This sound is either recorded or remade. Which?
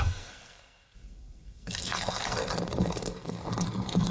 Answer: remade